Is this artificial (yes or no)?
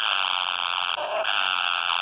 no